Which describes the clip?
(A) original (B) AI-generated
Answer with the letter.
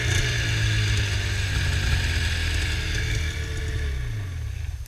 A